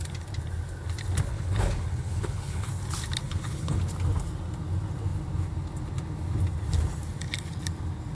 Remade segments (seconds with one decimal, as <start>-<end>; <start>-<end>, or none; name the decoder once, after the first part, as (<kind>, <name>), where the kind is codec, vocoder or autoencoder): 1.3-2.7 (codec, HILCodec); 3.2-3.8